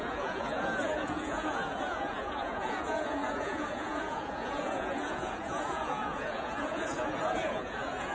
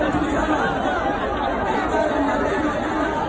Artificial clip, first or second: first